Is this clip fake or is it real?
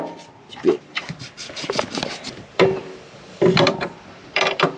fake